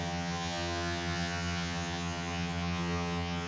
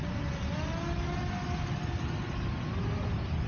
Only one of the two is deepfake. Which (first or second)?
first